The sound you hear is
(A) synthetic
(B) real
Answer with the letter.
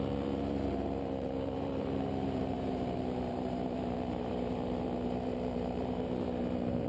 A